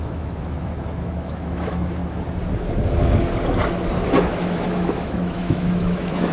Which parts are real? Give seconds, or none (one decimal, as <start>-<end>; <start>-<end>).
2.0-4.3

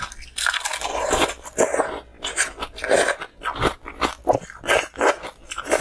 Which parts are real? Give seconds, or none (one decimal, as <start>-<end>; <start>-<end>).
0.0-5.8

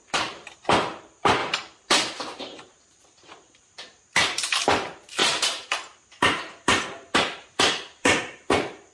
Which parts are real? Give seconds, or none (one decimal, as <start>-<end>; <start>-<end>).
none

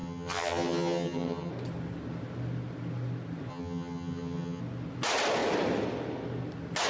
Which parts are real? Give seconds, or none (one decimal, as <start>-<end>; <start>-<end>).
1.5-3.5; 4.6-6.9

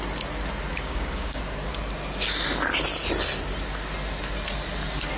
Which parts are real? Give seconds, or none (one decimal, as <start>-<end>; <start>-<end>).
0.0-0.7; 1.4-5.2

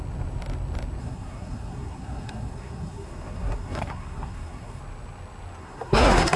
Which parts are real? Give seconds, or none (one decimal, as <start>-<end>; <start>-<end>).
0.0-1.0; 4.8-5.6

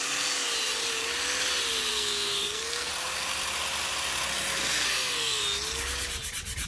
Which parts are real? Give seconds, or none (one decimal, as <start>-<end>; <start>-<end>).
0.0-1.9; 2.9-4.6; 5.4-6.7